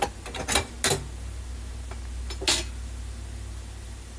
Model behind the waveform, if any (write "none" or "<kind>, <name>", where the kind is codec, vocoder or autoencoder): none